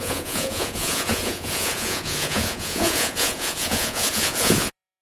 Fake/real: fake